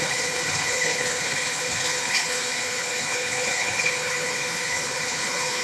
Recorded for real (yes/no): no